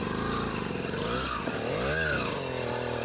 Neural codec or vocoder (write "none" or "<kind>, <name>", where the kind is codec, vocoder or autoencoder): none